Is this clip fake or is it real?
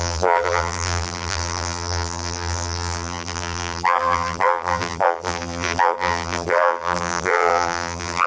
fake